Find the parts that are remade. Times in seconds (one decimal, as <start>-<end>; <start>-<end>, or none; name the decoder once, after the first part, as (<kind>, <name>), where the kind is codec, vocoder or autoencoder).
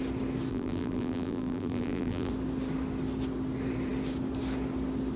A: 0.5-2.3 (vocoder, BigVGAN v2)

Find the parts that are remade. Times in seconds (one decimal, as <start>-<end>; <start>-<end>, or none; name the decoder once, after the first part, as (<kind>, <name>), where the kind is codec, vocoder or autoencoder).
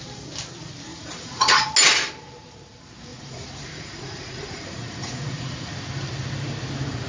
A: 0.9-1.7 (vocoder, Vocos); 3.1-5.7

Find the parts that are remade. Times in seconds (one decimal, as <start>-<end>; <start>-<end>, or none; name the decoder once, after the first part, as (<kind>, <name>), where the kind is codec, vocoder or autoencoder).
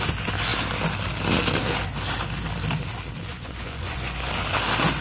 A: 3.3-4.3 (vocoder, Vocos)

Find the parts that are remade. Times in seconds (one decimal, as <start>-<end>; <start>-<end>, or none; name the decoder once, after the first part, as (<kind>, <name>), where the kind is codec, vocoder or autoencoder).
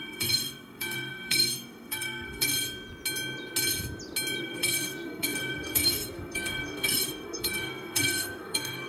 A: 0.0-2.5 (codec, SNAC); 4.4-8.9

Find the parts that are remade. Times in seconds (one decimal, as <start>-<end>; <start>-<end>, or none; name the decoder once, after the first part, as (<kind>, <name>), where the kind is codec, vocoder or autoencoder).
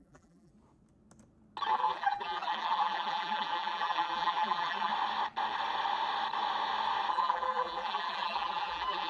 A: 0.0-0.5 (vocoder, BigVGAN v2); 1.7-4.9; 7.1-9.1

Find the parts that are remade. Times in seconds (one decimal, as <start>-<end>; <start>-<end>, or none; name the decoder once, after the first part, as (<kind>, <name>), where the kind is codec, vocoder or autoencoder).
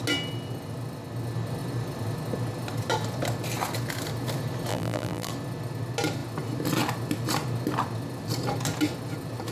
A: 4.7-5.3 (vocoder, BigVGAN v2)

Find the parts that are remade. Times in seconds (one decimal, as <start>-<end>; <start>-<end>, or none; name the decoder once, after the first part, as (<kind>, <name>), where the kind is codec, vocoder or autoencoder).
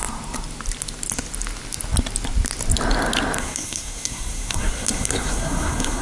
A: 3.4-6.0 (codec, SNAC)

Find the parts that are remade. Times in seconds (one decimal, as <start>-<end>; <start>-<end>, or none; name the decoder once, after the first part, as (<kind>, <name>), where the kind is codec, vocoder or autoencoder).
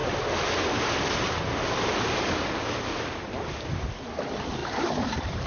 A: 4.6-5.5 (vocoder, BigVGAN v2)